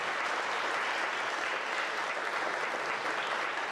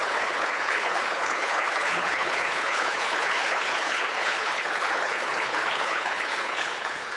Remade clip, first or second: second